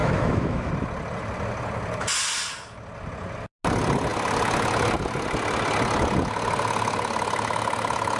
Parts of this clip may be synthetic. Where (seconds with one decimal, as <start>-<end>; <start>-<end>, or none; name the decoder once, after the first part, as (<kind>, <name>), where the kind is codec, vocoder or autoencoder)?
0.0-0.7 (autoencoder, DAC-VAE)